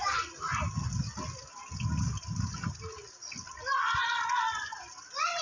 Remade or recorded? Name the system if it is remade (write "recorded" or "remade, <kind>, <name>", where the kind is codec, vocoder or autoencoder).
recorded